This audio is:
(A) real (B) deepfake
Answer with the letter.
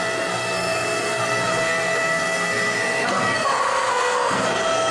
B